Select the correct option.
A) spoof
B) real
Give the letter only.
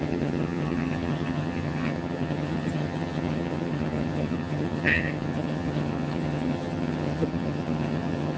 A